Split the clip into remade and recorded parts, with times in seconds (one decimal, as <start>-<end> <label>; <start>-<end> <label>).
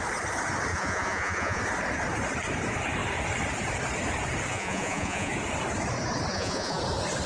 0.0-0.7 recorded; 0.7-1.6 remade; 1.6-4.5 recorded; 4.5-5.3 remade; 5.3-6.3 recorded; 6.3-6.8 remade; 6.8-7.3 recorded